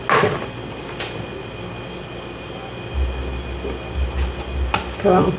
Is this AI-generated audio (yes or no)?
no